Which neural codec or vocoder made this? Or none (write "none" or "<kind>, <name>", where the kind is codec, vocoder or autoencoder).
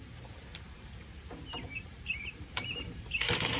vocoder, BigVGAN v2